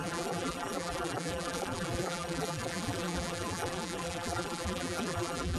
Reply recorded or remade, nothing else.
remade